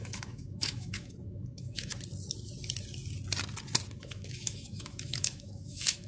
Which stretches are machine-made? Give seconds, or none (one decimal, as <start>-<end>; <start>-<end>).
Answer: 0.0-1.9; 4.0-6.1